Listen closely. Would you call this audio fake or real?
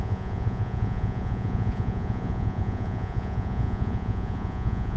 fake